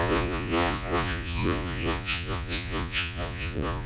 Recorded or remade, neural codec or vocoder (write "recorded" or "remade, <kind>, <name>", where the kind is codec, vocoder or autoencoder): remade, vocoder, Vocos